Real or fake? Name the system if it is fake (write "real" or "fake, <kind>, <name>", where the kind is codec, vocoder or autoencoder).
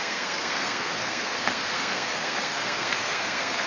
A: fake, codec, SNAC